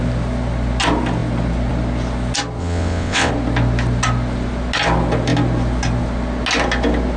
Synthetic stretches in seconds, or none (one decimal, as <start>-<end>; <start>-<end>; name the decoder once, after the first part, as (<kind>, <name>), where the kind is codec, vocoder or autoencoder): 2.6-3.3 (vocoder, WaveNeXt)